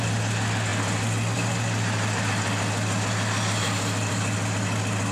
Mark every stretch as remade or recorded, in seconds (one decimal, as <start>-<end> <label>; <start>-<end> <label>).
0.0-5.1 recorded